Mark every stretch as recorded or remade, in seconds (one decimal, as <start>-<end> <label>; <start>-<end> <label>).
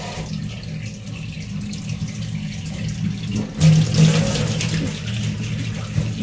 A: 0.0-6.2 recorded